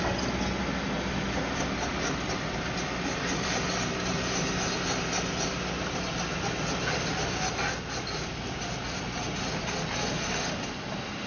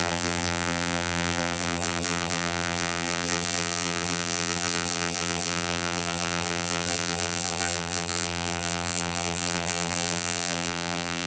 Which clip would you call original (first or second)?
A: first